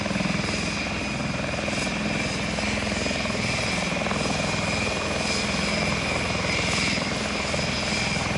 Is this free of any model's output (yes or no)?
yes